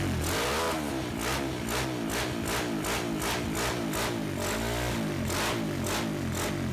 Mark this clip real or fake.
real